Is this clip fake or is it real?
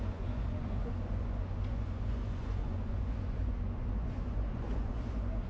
fake